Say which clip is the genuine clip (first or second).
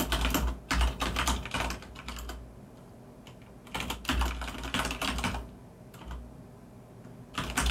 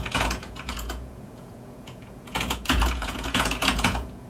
first